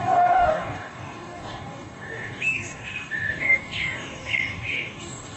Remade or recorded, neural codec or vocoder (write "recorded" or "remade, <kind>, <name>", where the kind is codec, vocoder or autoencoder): remade, codec, DAC